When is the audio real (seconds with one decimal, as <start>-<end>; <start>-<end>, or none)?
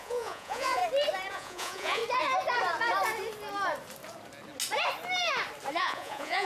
0.8-1.3; 2.0-5.8